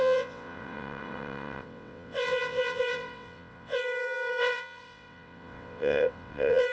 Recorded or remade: remade